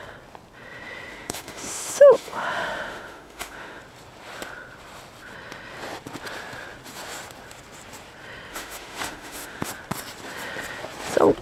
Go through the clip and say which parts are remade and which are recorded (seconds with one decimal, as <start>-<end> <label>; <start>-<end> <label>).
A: 0.0-1.1 recorded; 1.1-3.8 remade; 3.8-8.5 recorded; 8.5-9.7 remade; 9.7-11.4 recorded